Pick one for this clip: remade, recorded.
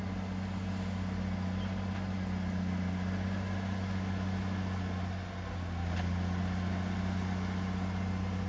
recorded